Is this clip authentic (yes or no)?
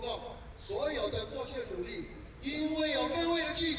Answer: yes